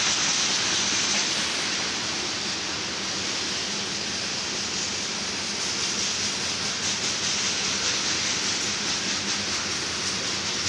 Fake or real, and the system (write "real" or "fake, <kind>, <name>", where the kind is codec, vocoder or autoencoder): real